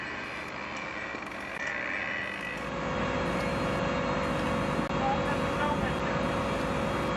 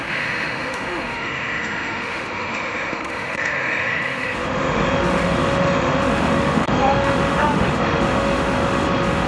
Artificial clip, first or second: second